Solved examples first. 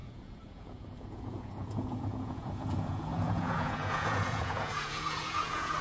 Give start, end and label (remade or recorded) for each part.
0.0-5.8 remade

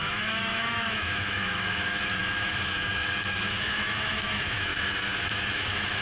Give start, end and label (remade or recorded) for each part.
0.0-4.7 remade; 4.7-5.2 recorded; 5.2-6.0 remade

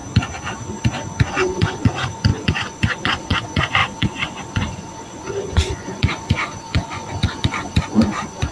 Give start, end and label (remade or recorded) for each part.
0.0-1.3 recorded; 1.3-8.5 remade

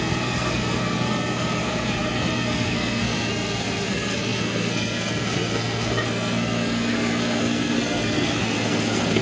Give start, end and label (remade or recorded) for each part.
0.0-9.2 remade

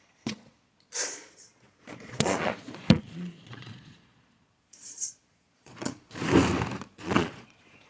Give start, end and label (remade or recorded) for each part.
0.0-6.2 remade; 6.2-6.8 recorded; 6.8-7.9 remade